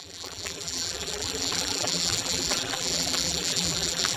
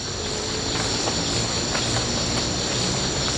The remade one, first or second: first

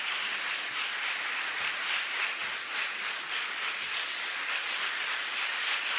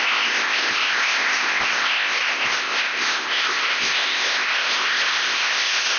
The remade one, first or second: second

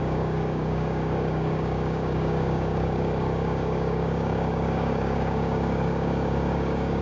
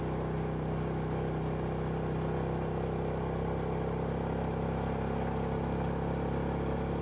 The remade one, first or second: first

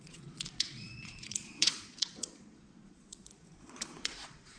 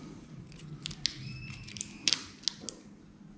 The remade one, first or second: first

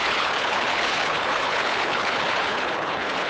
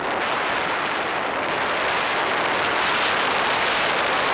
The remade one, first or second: first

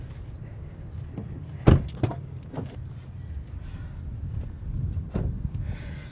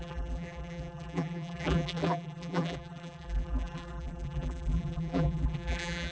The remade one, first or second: second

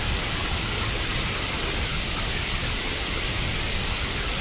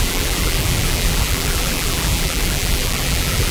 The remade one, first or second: second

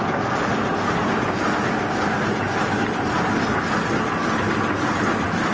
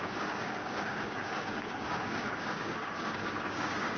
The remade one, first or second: second